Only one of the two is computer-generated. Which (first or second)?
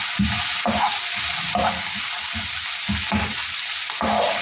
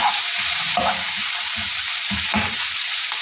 second